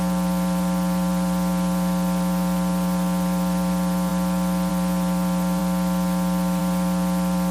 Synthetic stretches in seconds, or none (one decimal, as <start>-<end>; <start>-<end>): 0.0-4.1; 4.7-5.6; 6.6-7.5